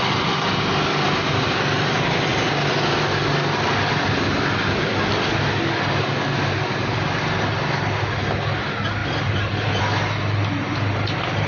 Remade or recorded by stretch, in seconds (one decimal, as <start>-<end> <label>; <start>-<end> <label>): 0.0-11.5 recorded